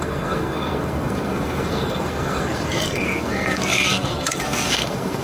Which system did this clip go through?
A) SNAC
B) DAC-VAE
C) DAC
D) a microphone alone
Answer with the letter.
A